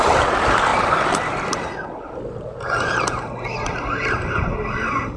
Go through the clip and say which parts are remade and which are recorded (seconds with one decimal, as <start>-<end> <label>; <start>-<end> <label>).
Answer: 0.0-5.2 recorded

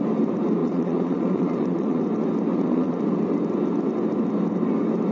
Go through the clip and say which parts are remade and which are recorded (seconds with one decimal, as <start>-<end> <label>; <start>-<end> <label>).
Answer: 0.0-0.6 recorded; 0.6-2.0 remade; 2.0-2.5 recorded; 2.5-3.0 remade; 3.0-5.1 recorded